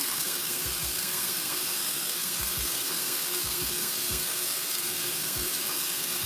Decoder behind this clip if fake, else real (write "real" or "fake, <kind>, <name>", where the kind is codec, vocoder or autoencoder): fake, codec, SNAC